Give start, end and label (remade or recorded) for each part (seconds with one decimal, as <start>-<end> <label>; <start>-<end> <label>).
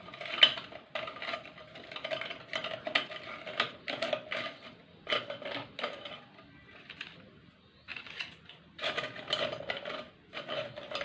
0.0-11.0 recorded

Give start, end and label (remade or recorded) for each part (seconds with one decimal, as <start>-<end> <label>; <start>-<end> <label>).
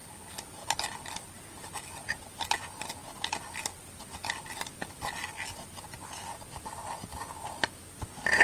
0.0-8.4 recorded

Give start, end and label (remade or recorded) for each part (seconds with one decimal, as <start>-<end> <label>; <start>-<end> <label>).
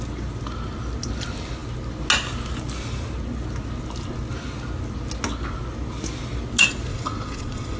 0.0-6.9 recorded; 6.9-7.8 remade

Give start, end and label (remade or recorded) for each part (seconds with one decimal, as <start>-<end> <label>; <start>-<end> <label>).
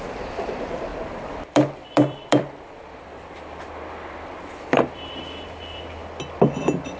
0.0-0.9 recorded; 0.9-5.1 remade; 5.1-7.0 recorded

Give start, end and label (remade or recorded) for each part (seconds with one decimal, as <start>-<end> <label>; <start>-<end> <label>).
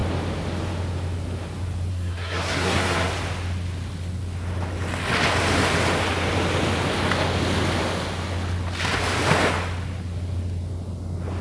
0.0-1.9 recorded; 1.9-3.1 remade; 3.1-11.4 recorded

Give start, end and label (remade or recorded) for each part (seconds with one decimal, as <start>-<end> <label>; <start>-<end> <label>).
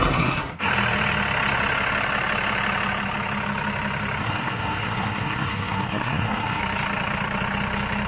0.0-0.7 remade; 0.7-4.2 recorded; 4.2-6.6 remade; 6.6-8.1 recorded